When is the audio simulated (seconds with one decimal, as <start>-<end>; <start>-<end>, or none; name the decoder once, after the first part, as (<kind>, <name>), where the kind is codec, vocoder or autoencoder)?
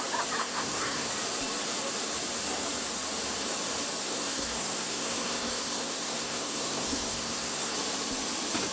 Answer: 0.4-1.1 (codec, SNAC); 4.0-7.7